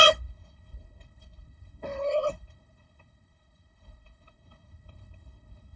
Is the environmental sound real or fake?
fake